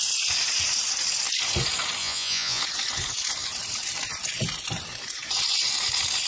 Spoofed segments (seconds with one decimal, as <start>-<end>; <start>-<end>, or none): 2.0-2.6